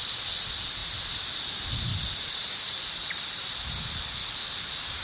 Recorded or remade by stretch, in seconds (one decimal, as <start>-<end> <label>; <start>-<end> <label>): 0.0-1.9 recorded; 1.9-3.8 remade; 3.8-5.0 recorded